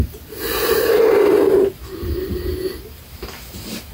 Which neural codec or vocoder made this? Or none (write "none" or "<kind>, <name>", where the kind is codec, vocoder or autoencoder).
none